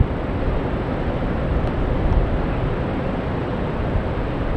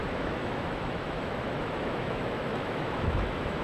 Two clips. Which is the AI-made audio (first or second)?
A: second